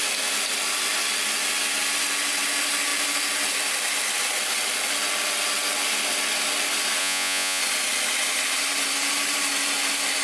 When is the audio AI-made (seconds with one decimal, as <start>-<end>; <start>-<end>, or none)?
7.0-7.6